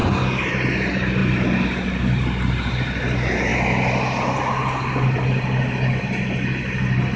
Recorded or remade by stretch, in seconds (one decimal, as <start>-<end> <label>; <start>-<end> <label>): 0.0-7.2 recorded